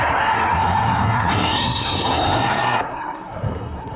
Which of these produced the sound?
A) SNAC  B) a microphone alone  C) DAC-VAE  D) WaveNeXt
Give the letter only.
A